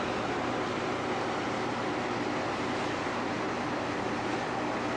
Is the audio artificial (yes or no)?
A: no